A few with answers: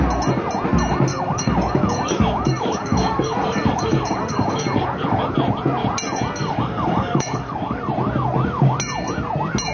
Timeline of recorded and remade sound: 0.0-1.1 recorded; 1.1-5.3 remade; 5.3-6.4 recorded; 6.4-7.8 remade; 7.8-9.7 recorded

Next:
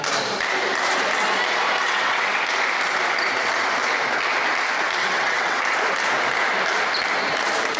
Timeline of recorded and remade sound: 0.0-1.8 recorded; 1.8-2.4 remade; 2.4-5.0 recorded; 5.0-5.6 remade; 5.6-7.8 recorded

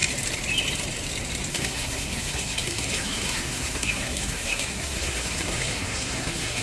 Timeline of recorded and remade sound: 0.0-1.5 recorded; 1.5-6.6 remade

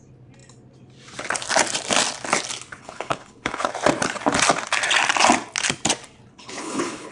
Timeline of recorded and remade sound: 0.0-2.8 recorded; 2.8-3.7 remade; 3.7-6.3 recorded; 6.3-7.1 remade

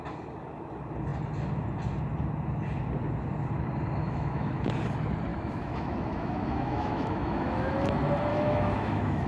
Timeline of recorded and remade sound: 0.0-4.0 recorded; 4.0-4.7 remade; 4.7-5.3 recorded; 5.3-7.7 remade; 7.7-8.3 recorded; 8.3-9.3 remade

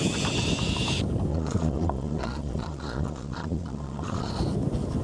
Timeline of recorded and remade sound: 0.0-1.3 recorded; 1.3-4.3 remade; 4.3-5.0 recorded